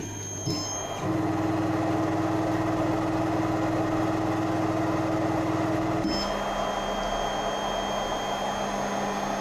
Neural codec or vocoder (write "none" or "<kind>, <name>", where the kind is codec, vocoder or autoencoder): none